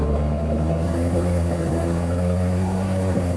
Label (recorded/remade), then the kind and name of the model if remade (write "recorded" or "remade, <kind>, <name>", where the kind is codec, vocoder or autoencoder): remade, codec, SNAC